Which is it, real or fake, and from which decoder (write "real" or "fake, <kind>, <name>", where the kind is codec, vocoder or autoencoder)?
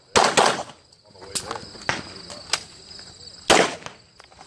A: real